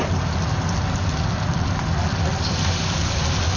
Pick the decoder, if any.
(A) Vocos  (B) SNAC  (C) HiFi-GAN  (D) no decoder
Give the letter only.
D